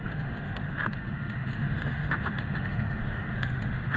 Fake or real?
fake